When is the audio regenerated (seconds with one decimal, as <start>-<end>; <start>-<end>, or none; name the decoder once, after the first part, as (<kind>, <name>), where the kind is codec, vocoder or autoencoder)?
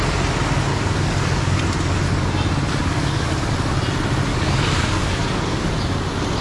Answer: 0.7-1.6 (codec, DAC); 2.8-3.5; 4.3-5.7